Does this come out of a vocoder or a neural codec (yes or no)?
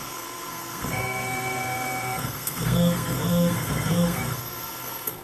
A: yes